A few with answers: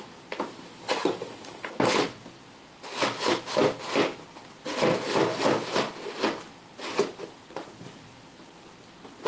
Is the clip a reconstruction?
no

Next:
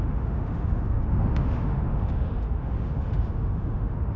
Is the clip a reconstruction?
yes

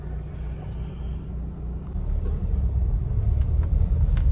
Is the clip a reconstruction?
no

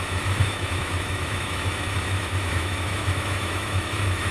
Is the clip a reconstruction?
yes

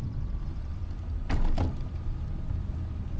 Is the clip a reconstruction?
no